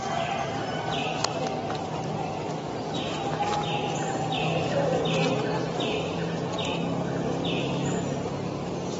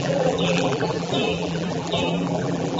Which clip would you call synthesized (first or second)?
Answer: second